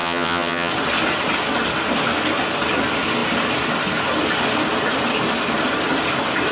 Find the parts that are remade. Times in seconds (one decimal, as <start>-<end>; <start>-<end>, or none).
0.0-0.7